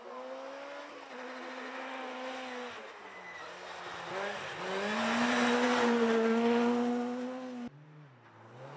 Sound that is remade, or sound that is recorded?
recorded